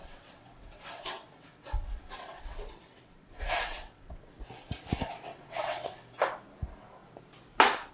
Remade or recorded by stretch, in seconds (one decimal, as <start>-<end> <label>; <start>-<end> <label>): 0.0-4.3 remade; 4.3-5.3 recorded; 5.3-5.9 remade; 5.9-7.9 recorded